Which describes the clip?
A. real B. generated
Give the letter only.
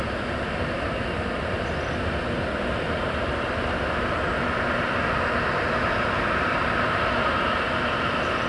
A